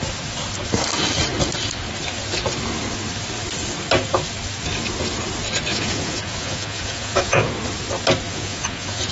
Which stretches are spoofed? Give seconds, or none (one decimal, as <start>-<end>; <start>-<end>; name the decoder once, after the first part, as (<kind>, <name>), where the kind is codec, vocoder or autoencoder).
5.7-7.5 (vocoder, Vocos); 8.3-9.1